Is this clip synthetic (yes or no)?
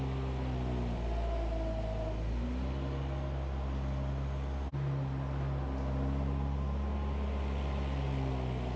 no